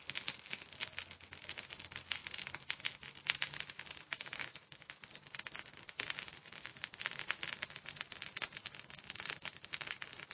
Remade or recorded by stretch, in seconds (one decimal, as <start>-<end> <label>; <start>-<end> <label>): 0.0-4.1 recorded; 4.1-4.9 remade; 4.9-10.3 recorded